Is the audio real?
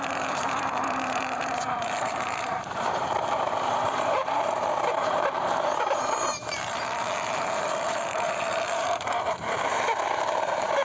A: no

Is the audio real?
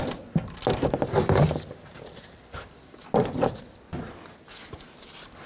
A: yes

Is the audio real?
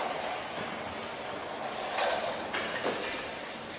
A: yes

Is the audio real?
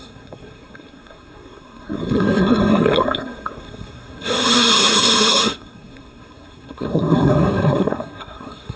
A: no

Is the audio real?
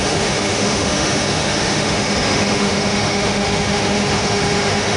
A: no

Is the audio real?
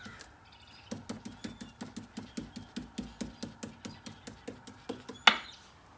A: yes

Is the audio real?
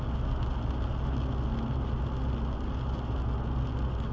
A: yes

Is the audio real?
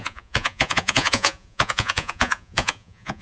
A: no